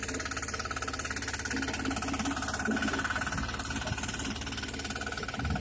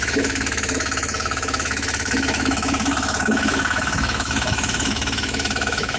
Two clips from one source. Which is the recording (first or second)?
first